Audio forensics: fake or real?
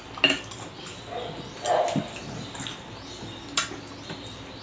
real